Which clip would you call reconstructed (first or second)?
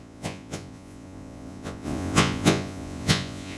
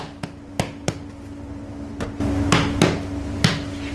first